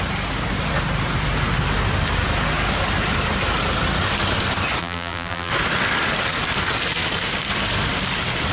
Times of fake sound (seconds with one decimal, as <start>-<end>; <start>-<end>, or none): 4.8-5.5